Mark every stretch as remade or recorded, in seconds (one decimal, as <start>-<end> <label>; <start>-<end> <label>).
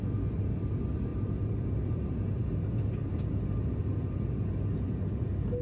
0.0-1.1 recorded; 1.1-1.9 remade; 1.9-3.0 recorded; 3.0-3.9 remade; 3.9-5.6 recorded